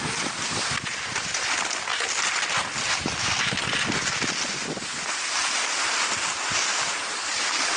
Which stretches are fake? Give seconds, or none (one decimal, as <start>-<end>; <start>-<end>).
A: none